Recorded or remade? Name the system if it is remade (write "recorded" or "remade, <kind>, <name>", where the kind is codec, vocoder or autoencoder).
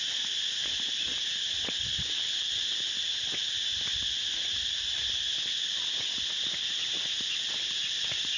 recorded